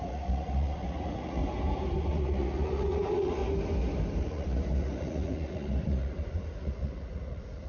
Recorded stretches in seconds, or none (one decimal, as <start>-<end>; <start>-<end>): 1.4-2.0; 3.4-4.2